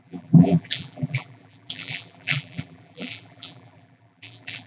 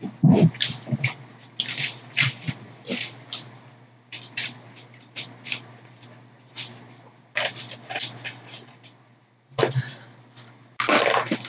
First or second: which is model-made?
first